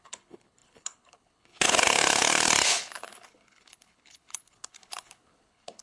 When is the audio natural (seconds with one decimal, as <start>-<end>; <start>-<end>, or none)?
none